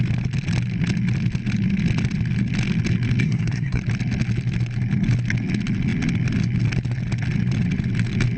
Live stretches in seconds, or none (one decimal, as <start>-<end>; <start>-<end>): 0.0-3.2; 3.8-8.4